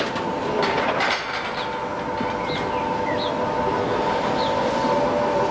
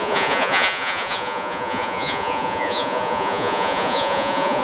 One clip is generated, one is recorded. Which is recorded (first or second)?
first